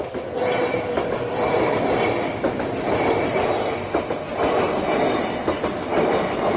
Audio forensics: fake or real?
real